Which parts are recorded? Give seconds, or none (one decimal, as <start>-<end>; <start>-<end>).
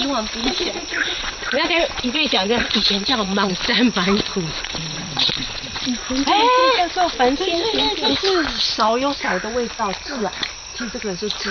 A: 0.0-0.4; 3.5-4.3; 5.8-11.5